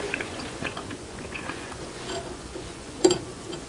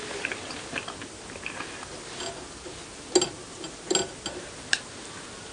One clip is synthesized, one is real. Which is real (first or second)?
second